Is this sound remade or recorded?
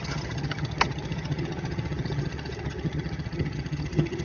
remade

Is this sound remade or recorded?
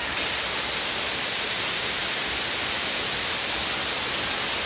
recorded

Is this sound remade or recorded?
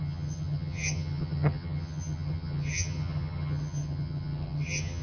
remade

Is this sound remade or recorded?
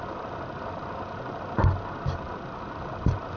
recorded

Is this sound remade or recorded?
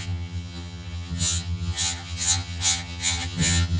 remade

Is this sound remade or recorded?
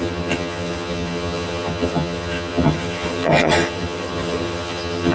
remade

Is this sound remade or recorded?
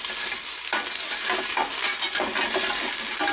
recorded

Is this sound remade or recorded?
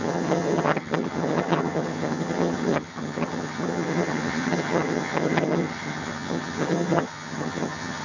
remade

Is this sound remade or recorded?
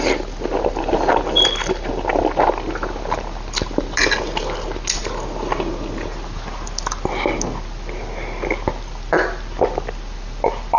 recorded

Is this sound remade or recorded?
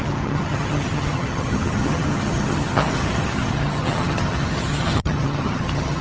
remade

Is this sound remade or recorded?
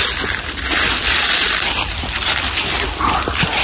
recorded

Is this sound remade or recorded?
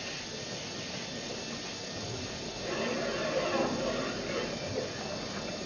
recorded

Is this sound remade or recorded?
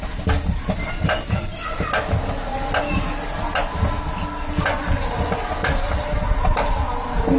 recorded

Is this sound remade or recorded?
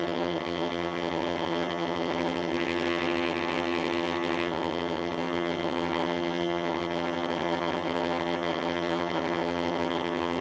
remade